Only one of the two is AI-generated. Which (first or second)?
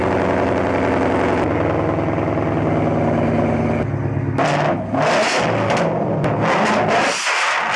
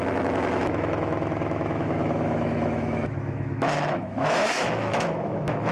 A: second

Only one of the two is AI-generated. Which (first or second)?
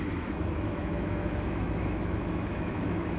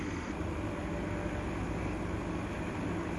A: first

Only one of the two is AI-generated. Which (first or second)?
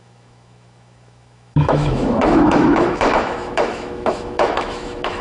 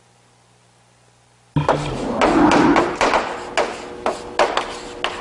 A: first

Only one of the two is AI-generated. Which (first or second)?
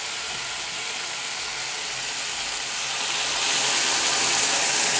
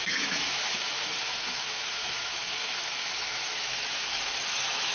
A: second